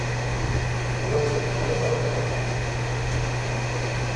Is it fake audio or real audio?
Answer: fake